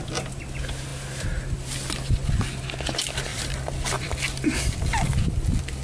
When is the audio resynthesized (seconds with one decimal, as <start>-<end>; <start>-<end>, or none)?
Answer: 3.3-4.9